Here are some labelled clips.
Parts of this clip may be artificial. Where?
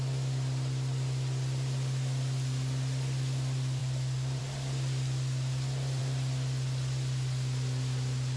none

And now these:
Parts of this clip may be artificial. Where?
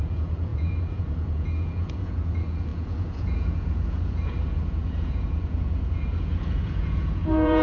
0.0-7.6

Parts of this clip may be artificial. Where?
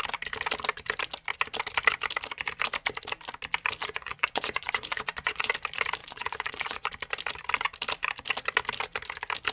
3.8-5.5; 6.0-6.9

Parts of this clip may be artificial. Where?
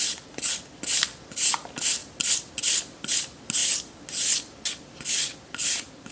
none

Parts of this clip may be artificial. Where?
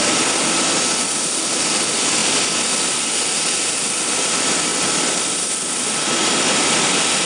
0.0-2.2; 2.8-7.3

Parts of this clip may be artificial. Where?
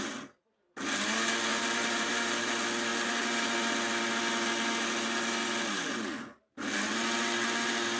1.5-2.5